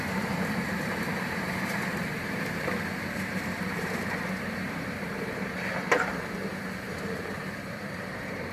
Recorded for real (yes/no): no